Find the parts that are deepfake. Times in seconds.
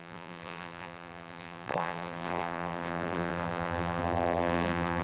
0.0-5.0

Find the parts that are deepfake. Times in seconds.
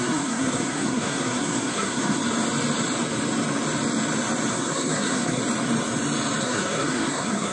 0.0-2.2; 4.5-5.4; 6.4-7.5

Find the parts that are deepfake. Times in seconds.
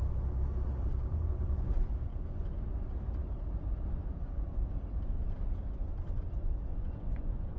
1.1-1.7; 2.1-2.6; 6.7-7.6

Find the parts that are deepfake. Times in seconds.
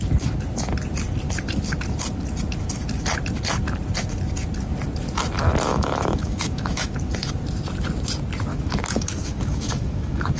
5.7-6.9; 8.5-10.4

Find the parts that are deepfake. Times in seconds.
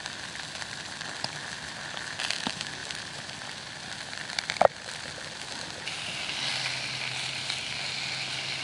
2.8-4.3